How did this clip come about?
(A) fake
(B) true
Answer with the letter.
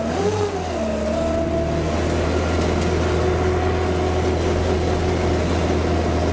B